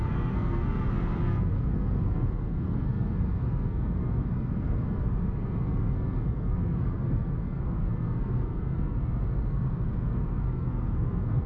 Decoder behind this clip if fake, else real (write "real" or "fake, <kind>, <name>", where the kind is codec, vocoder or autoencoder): fake, codec, SNAC